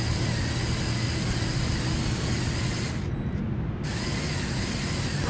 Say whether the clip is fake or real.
real